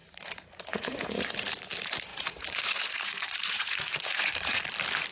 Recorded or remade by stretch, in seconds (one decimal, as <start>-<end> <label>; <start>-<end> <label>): 0.0-1.3 remade; 1.3-2.1 recorded; 2.1-4.6 remade; 4.6-5.1 recorded